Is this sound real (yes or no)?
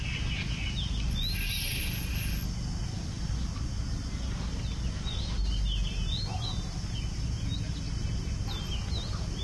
yes